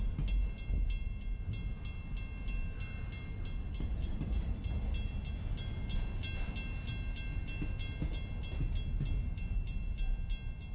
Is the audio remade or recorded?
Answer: recorded